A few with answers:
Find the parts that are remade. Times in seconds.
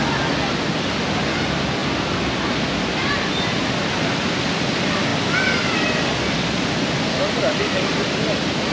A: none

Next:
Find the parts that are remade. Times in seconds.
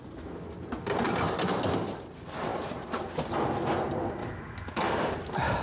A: 4.2-4.8